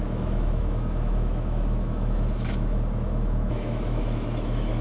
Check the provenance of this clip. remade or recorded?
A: remade